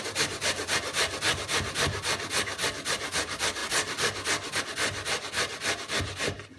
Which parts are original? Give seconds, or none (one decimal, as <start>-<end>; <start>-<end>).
0.0-6.6